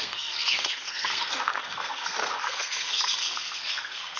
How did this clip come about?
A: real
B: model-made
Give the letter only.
B